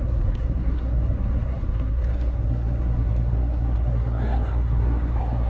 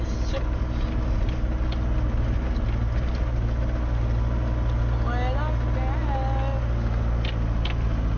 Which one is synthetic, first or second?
first